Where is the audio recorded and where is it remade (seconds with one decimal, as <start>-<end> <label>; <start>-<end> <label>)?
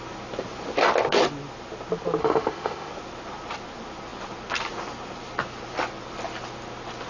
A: 0.0-2.2 recorded; 2.2-2.9 remade; 2.9-7.1 recorded